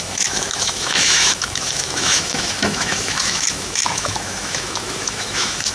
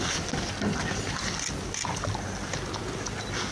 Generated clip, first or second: first